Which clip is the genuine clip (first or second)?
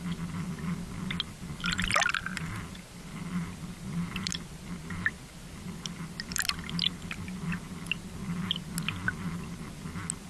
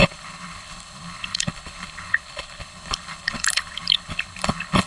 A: first